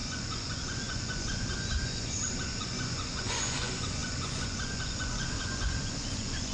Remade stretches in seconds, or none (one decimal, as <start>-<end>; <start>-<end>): 0.0-6.5